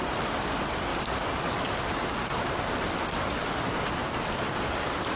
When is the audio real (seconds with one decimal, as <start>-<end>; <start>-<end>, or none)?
0.0-0.9; 4.0-5.2